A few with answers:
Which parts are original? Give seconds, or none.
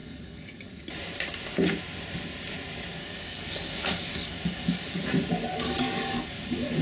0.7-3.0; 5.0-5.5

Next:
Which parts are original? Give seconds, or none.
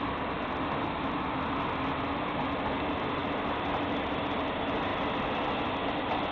0.0-6.3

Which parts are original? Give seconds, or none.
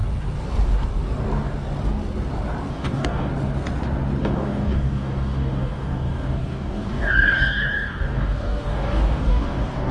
0.0-2.7; 3.3-4.2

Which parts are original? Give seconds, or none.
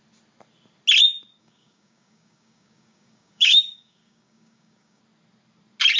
0.0-1.4; 5.0-6.0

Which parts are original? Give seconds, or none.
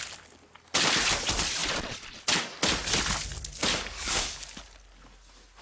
0.0-3.7; 4.6-5.6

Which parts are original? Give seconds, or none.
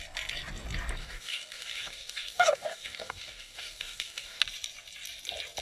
0.0-1.0; 4.4-5.6